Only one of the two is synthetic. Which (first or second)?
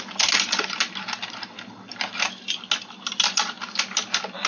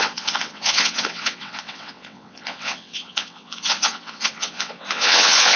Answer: second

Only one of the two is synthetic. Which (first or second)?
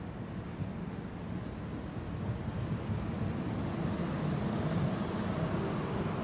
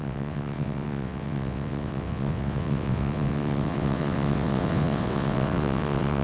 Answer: second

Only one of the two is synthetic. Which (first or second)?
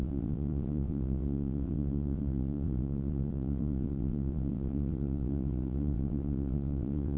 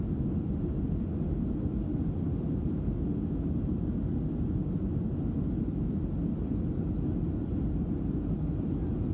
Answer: first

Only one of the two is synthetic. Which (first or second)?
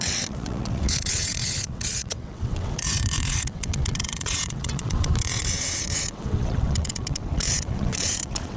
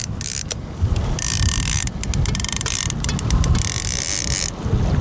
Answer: first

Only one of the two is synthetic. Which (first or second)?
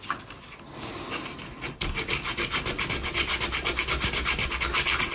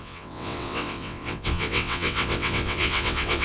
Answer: second